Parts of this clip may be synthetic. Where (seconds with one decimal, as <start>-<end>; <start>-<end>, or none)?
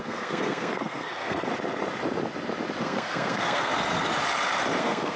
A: 0.0-1.5; 2.8-3.7; 4.8-5.2